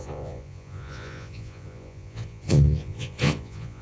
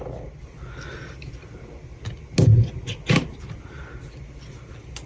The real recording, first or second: second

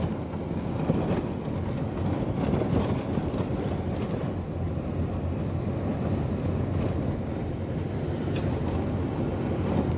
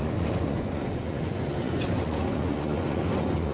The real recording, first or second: first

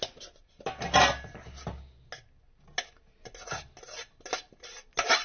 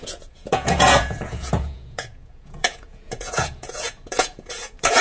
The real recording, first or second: first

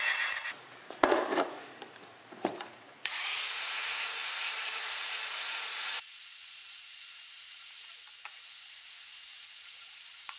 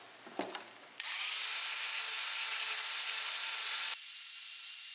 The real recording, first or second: second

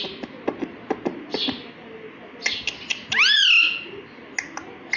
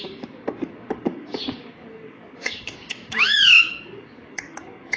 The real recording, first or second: first